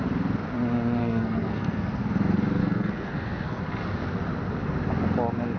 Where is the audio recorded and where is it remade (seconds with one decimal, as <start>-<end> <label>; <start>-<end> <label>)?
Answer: 0.0-1.0 recorded; 1.0-2.0 remade; 2.0-2.6 recorded; 2.6-3.6 remade; 3.6-5.6 recorded